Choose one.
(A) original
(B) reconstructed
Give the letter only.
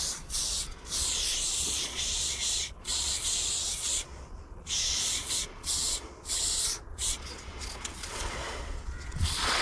B